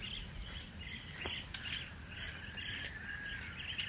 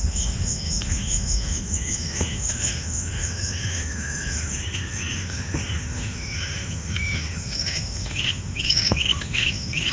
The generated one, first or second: second